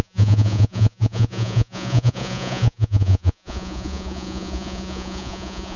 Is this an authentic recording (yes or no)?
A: no